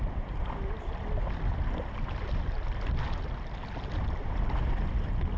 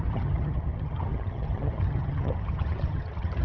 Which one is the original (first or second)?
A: first